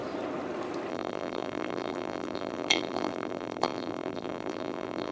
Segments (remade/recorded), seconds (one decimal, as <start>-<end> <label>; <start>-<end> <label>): 0.0-0.9 recorded; 0.9-5.1 remade

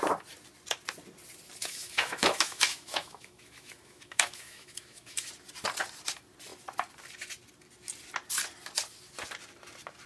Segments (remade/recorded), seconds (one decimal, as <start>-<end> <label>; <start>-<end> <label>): 0.0-1.6 recorded; 1.6-5.3 remade; 5.3-10.1 recorded

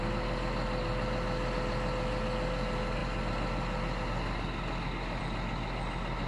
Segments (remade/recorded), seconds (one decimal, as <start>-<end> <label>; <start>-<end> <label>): 0.0-6.3 recorded

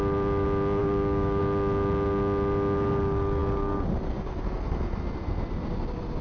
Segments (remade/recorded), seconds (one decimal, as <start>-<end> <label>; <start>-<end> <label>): 0.0-0.8 recorded; 0.8-1.4 remade; 1.4-6.2 recorded

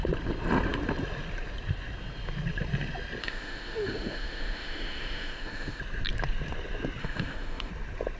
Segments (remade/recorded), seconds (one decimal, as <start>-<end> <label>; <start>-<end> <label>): 0.0-3.2 recorded; 3.2-5.8 remade; 5.8-7.0 recorded; 7.0-7.7 remade; 7.7-8.2 recorded

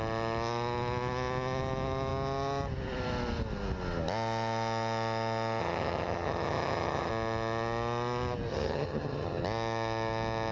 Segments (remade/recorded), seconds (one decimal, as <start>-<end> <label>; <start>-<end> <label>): 0.0-5.6 recorded; 5.6-7.1 remade; 7.1-8.5 recorded; 8.5-9.4 remade; 9.4-10.5 recorded

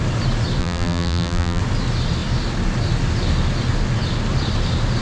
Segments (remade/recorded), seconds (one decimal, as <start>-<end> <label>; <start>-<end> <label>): 0.0-0.6 recorded; 0.6-1.6 remade; 1.6-5.0 recorded

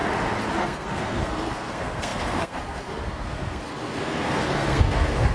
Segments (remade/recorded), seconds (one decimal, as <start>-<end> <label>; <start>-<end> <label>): 0.0-0.5 recorded; 0.5-5.3 remade